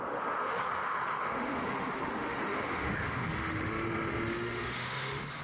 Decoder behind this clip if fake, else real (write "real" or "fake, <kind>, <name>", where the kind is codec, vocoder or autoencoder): fake, autoencoder, DAC-VAE